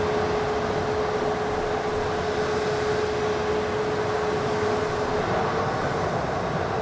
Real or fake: real